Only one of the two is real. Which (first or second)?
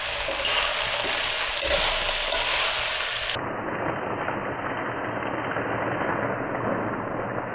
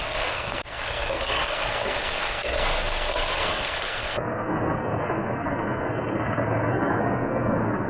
first